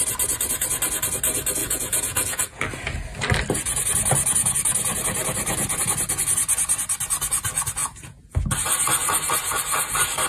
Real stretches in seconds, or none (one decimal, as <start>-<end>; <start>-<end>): 0.0-1.6; 2.6-7.8; 8.3-10.3